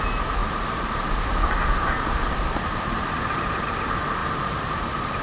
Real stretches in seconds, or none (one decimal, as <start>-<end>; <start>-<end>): 0.0-0.4; 3.5-4.2